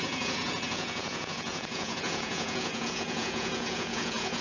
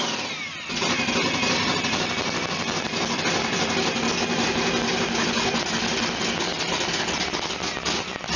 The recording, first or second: second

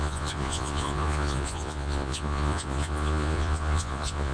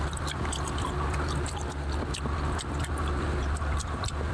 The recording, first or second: second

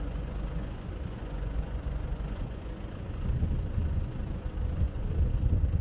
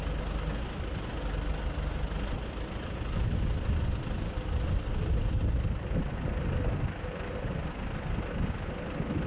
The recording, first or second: second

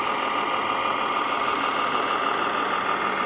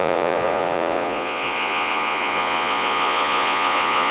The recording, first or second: first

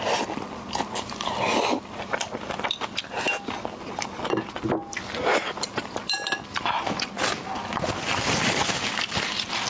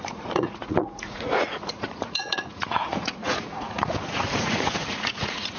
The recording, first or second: first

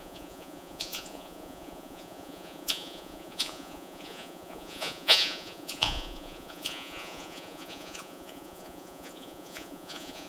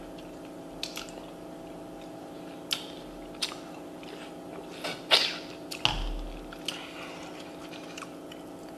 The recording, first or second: second